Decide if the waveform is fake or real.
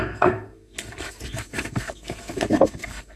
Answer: fake